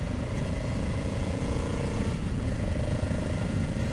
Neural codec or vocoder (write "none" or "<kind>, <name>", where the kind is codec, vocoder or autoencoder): vocoder, Vocos